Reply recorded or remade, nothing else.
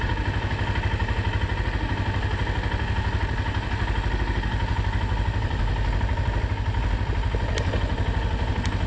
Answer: recorded